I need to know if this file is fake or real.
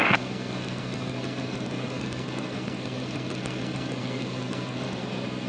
fake